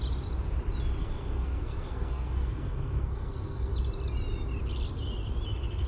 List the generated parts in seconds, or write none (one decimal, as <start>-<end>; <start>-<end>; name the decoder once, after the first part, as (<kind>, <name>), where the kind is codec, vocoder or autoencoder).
1.0-3.7 (codec, SNAC)